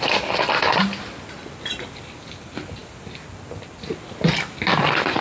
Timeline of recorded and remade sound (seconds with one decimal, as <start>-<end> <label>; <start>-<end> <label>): 0.0-5.2 recorded

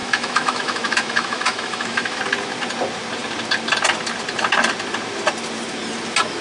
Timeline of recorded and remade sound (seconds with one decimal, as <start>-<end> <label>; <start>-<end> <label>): 0.0-2.2 remade; 2.2-6.4 recorded

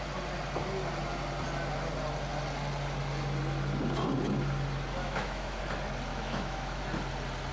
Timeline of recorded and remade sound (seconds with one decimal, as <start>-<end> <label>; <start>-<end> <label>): 0.0-5.0 recorded; 5.0-5.6 remade; 5.6-6.1 recorded; 6.1-6.8 remade; 6.8-7.5 recorded

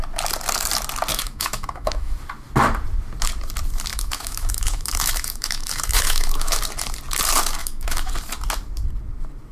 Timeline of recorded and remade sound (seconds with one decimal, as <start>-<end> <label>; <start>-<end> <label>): 0.0-1.1 recorded; 1.1-2.2 remade; 2.2-3.9 recorded; 3.9-6.6 remade; 6.6-7.6 recorded; 7.6-8.1 remade; 8.1-9.5 recorded

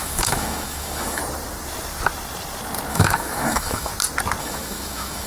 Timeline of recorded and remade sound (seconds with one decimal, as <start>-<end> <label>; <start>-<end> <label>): 0.0-1.2 remade; 1.2-2.9 recorded; 2.9-3.9 remade; 3.9-4.4 recorded; 4.4-5.3 remade